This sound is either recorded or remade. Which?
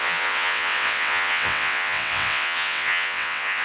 remade